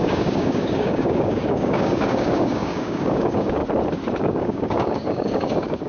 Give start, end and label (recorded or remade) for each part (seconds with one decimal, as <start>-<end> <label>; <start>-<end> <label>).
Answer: 0.0-3.6 remade; 3.6-4.2 recorded; 4.2-5.9 remade